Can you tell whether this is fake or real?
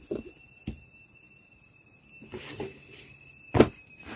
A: real